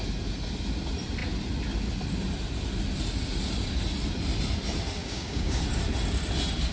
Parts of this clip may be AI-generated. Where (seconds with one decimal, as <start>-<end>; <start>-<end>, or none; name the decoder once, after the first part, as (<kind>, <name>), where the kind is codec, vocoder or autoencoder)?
5.0-5.6 (codec, DAC)